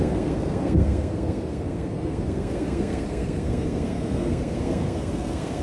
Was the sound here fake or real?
fake